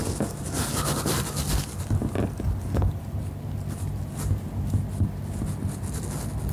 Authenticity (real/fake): real